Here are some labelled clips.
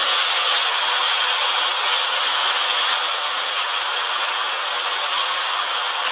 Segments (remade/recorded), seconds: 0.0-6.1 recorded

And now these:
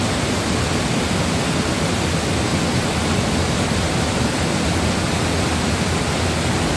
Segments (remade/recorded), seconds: 0.0-6.8 recorded

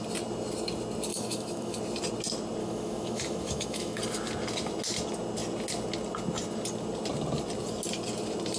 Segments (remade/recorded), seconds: 0.0-1.1 recorded; 1.1-1.8 remade; 1.8-2.6 recorded; 2.6-4.0 remade; 4.0-8.6 recorded

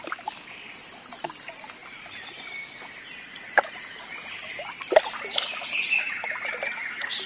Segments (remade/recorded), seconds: 0.0-7.3 recorded

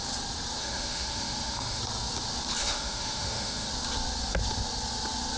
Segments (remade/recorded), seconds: 0.0-0.6 recorded; 0.6-1.8 remade; 1.8-2.6 recorded; 2.6-3.7 remade; 3.7-5.4 recorded

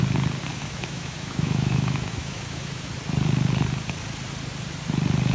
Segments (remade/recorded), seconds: 0.0-0.5 recorded; 0.5-2.9 remade; 2.9-5.3 recorded

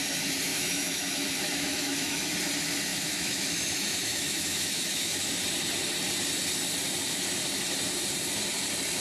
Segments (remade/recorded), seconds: 0.0-0.5 recorded; 0.5-2.3 remade; 2.3-2.9 recorded; 2.9-5.3 remade; 5.3-9.0 recorded

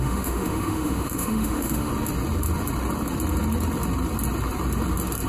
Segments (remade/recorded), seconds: 0.0-1.9 remade; 1.9-5.3 recorded